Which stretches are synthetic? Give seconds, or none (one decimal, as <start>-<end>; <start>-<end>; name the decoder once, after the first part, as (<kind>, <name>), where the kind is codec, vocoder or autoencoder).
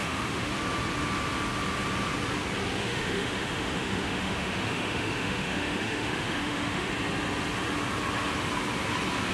0.0-0.5 (autoencoder, DAC-VAE); 2.8-6.9